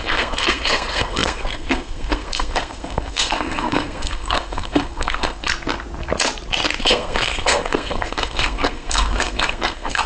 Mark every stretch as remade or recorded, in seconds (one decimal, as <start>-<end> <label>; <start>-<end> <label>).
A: 0.0-5.5 remade; 5.5-6.8 recorded; 6.8-10.1 remade